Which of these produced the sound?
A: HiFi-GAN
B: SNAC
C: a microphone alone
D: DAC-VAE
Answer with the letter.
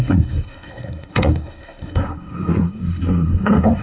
B